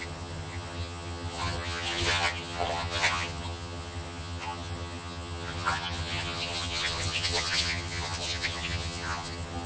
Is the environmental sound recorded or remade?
remade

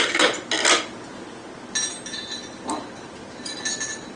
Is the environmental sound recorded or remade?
recorded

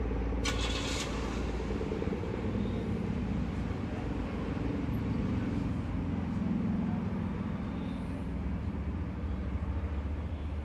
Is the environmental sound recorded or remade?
recorded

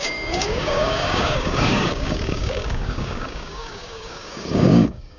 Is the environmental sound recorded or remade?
remade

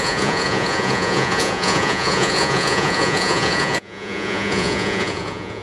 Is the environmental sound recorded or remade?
remade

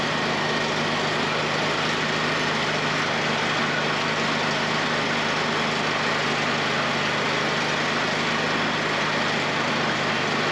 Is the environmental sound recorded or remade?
recorded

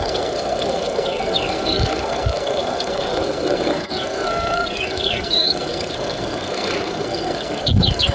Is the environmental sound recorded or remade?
remade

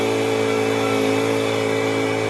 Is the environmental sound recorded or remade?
recorded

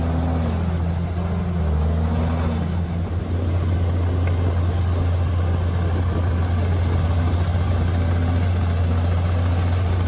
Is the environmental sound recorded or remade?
recorded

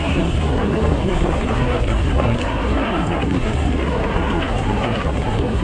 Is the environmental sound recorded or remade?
remade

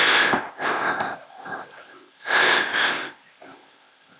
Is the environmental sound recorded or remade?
remade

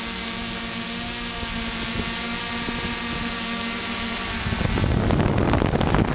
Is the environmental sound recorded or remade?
recorded